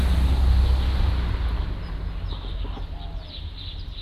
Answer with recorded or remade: recorded